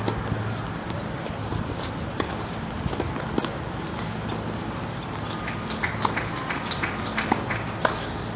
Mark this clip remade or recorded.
recorded